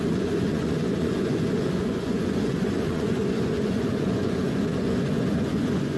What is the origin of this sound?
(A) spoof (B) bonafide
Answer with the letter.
A